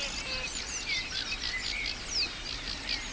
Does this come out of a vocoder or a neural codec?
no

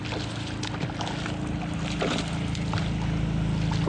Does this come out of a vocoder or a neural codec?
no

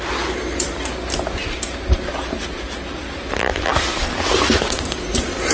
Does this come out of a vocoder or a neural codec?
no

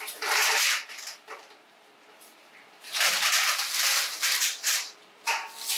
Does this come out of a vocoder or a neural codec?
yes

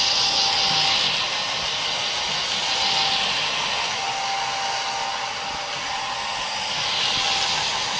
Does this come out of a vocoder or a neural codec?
no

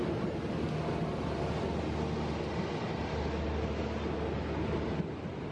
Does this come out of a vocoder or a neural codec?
no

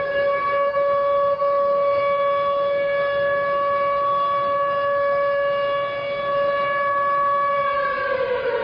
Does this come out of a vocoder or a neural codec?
no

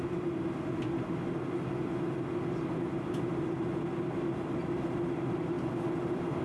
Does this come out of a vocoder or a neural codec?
no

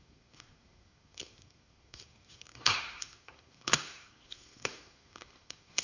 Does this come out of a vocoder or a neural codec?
yes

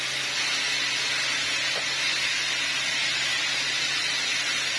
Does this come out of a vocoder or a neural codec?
no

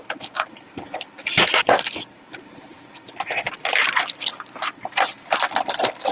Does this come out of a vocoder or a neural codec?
yes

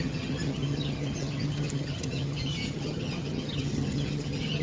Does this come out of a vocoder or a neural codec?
yes